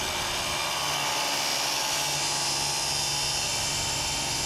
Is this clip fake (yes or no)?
no